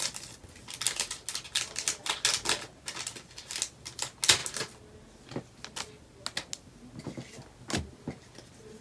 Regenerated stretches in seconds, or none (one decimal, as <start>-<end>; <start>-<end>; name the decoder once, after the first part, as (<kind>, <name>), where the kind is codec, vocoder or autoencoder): none